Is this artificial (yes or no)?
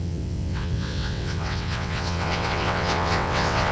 yes